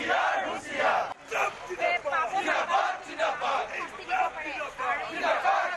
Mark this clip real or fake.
real